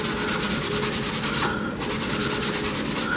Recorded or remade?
recorded